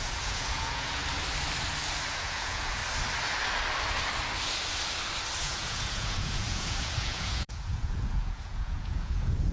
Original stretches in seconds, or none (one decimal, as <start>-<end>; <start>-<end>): 1.0-2.1; 2.8-5.4